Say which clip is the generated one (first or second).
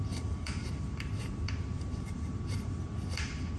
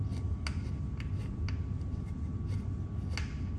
first